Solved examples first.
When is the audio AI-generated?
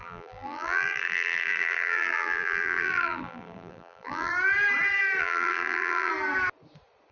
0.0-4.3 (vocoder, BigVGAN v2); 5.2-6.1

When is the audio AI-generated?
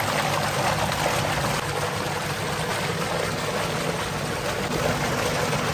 none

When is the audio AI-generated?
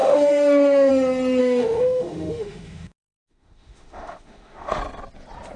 0.0-0.9 (autoencoder, DAC-VAE); 1.4-4.8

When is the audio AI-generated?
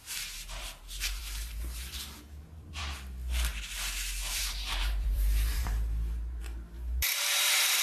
0.0-2.8 (vocoder, BigVGAN v2); 4.3-7.8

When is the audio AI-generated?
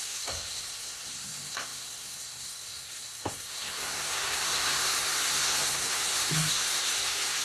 0.0-7.4 (codec, SNAC)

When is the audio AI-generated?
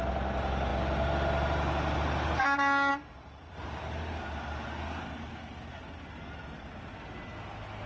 none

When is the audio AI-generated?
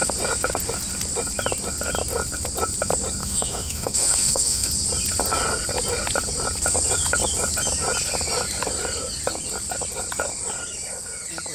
3.2-4.7 (autoencoder, DAC-VAE)